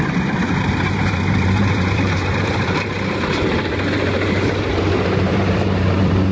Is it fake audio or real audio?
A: fake